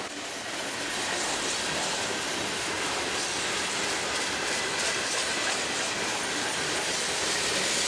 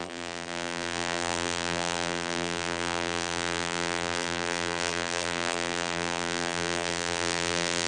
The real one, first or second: first